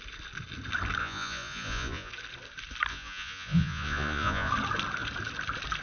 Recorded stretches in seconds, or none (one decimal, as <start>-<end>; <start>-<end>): 0.0-1.0; 2.1-2.9; 4.5-5.8